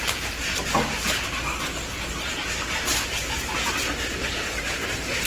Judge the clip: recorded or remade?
remade